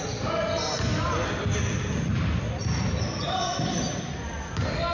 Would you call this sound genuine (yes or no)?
yes